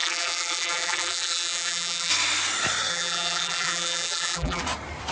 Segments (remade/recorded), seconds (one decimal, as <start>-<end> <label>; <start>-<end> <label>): 0.0-2.1 remade; 2.1-2.9 recorded; 2.9-4.6 remade; 4.6-5.1 recorded